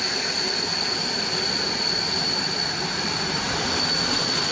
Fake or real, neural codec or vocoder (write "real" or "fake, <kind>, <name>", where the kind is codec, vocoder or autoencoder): real